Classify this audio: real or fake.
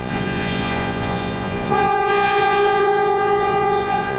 fake